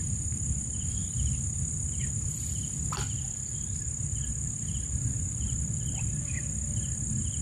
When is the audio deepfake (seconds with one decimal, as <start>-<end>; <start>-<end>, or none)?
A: none